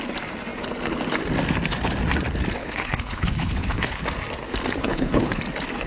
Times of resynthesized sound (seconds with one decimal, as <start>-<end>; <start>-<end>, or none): 2.6-4.0; 4.8-5.4